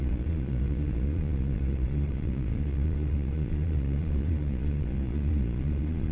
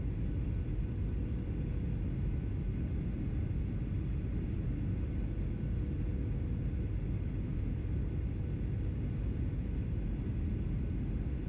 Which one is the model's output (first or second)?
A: first